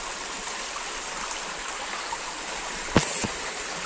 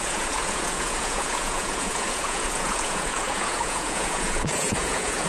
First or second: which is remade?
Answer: second